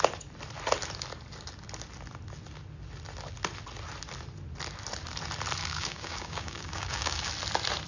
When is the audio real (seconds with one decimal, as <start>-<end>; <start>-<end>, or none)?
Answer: 0.0-5.6; 7.3-7.9